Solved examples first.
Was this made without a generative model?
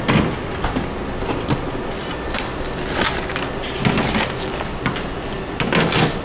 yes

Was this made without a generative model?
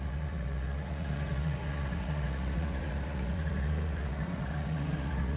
no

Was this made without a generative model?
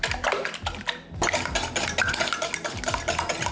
yes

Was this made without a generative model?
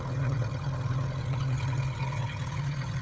no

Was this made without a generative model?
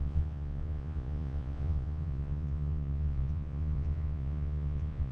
no